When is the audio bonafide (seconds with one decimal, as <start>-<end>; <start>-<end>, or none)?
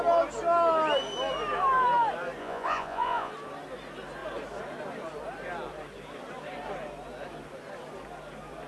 0.0-2.4; 3.3-8.7